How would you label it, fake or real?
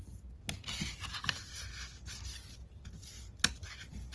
real